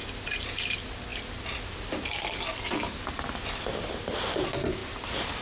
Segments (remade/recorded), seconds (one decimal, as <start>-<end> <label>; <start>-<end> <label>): 0.0-1.1 recorded; 1.1-4.3 remade; 4.3-4.8 recorded; 4.8-5.4 remade